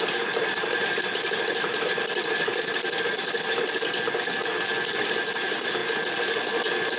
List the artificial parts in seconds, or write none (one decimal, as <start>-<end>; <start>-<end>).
0.0-3.2; 5.2-5.8